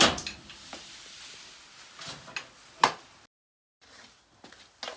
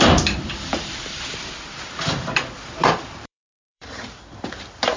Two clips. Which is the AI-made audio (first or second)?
second